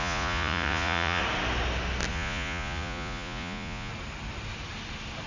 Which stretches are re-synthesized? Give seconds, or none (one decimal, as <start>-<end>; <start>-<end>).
0.0-1.2; 2.1-3.9